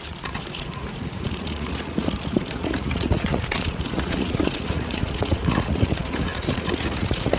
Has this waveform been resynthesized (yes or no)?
yes